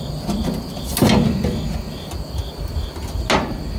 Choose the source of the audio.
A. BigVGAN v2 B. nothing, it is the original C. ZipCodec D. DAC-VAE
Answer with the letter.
B